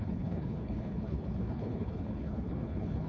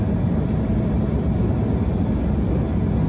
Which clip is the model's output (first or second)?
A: first